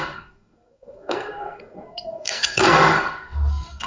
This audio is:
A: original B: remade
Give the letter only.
B